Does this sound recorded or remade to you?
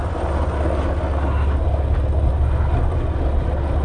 recorded